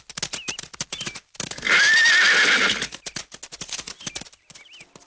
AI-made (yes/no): no